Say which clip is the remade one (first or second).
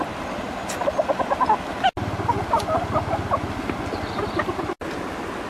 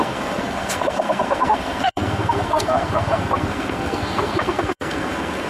second